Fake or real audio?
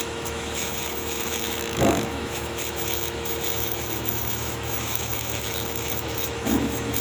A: fake